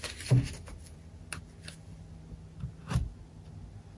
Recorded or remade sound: recorded